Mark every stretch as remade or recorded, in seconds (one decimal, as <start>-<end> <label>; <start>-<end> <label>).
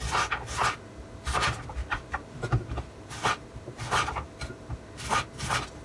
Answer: 0.0-1.8 recorded; 1.8-5.3 remade; 5.3-5.8 recorded